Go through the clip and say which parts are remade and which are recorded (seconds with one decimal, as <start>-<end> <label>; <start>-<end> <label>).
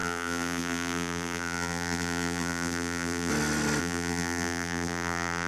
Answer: 0.0-3.3 remade; 3.3-3.8 recorded; 3.8-5.5 remade